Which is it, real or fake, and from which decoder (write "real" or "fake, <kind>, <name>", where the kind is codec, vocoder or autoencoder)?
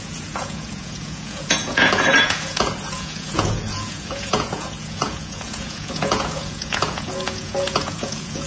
fake, vocoder, Vocos